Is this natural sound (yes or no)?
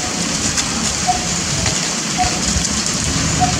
yes